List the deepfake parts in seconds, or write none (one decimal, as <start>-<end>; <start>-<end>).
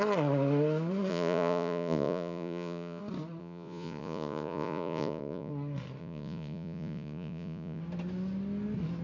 1.1-3.0; 3.4-5.5; 6.0-7.8